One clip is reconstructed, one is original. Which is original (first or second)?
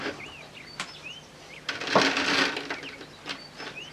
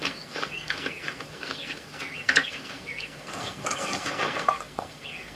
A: first